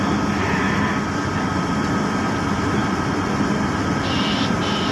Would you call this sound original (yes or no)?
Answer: yes